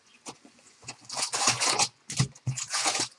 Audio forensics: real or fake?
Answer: fake